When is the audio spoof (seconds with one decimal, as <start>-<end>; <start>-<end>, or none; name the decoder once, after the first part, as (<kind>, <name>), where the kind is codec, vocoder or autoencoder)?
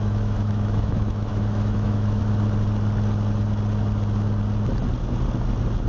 0.0-2.2 (autoencoder, DAC-VAE)